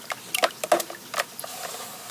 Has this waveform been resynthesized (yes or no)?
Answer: no